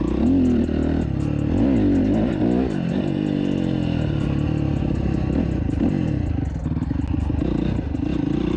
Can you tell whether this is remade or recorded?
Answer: recorded